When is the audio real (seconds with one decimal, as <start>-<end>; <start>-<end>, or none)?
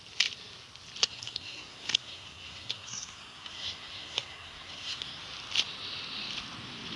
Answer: 0.0-1.0; 5.2-7.0